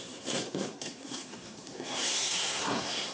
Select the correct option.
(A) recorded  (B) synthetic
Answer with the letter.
B